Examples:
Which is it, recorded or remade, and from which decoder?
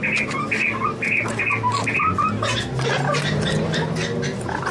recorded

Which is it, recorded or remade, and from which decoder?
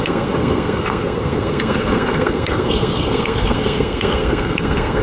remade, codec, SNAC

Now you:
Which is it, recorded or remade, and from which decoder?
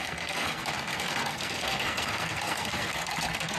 remade, codec, SNAC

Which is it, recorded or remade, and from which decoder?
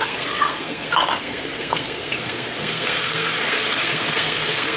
remade, codec, SNAC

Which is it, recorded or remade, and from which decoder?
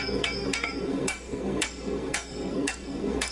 remade, codec, SNAC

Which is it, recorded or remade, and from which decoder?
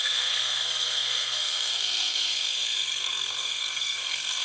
remade, codec, SNAC